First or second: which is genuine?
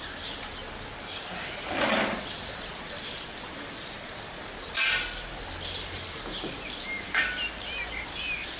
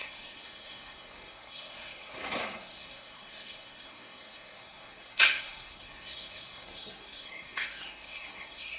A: first